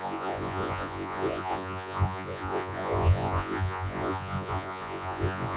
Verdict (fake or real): fake